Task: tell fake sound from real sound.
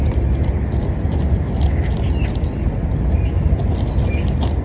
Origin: real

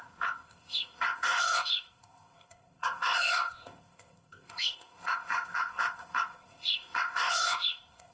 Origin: fake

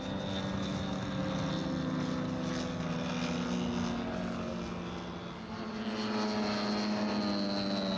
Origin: real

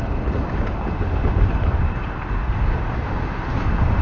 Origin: real